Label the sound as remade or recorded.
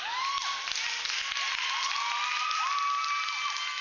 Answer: recorded